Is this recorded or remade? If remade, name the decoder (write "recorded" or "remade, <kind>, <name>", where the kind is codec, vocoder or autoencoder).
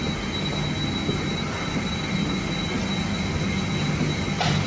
recorded